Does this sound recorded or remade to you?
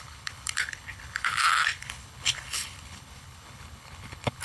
remade